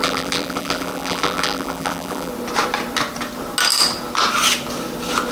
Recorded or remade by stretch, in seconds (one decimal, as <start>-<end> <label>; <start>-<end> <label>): 0.0-2.3 remade; 2.3-5.3 recorded